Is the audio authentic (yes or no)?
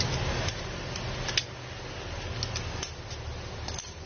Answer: yes